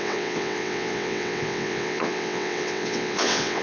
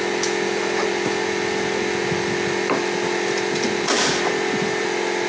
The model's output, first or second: first